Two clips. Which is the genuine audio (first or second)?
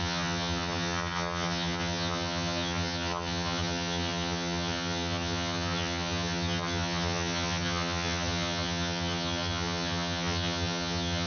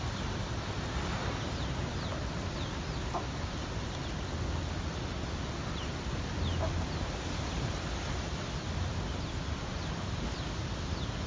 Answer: second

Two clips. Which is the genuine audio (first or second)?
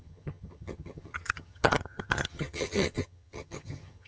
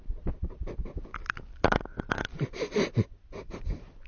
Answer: second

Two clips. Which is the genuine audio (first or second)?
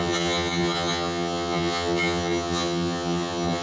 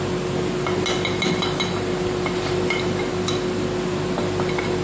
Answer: second